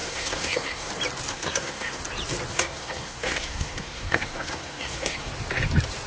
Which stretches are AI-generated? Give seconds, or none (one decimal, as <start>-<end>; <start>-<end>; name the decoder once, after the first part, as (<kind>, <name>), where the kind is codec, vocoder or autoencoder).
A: 0.0-0.9 (codec, SNAC); 1.3-2.0; 2.5-5.3